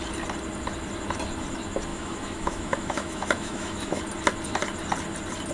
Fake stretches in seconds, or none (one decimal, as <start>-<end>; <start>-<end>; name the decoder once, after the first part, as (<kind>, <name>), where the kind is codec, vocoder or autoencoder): 1.9-4.0 (autoencoder, DAC-VAE)